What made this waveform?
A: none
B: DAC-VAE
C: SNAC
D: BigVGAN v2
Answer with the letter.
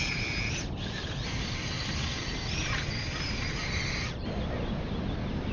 A